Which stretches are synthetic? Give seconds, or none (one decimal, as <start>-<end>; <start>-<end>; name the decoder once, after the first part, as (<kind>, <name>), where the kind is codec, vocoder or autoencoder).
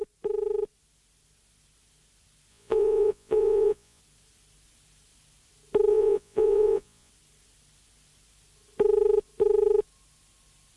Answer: 2.5-4.0 (vocoder, Vocos); 5.9-7.1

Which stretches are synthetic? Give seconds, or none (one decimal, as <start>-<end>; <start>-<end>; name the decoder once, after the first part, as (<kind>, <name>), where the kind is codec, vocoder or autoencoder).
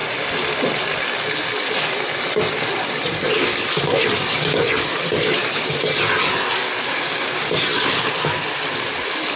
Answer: 6.8-7.5 (codec, DAC)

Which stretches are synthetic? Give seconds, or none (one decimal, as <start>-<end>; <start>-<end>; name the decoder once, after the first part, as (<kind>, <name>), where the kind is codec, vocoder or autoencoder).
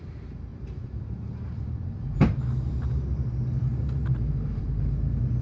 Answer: 0.5-3.3 (vocoder, BigVGAN v2)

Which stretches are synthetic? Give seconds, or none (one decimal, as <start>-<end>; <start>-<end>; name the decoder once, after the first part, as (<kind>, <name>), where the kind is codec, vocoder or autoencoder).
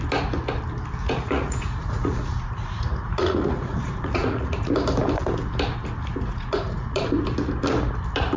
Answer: 1.0-4.7 (vocoder, Vocos); 6.3-7.1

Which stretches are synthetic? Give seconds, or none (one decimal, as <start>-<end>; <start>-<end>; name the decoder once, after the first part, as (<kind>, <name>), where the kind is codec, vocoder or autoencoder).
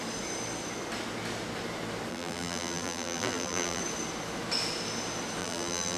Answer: 2.1-3.8 (vocoder, BigVGAN v2); 5.4-6.0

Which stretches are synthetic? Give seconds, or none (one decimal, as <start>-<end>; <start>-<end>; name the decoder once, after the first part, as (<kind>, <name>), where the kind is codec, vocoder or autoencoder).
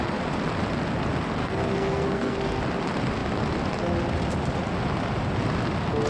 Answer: 1.4-2.6 (codec, SNAC)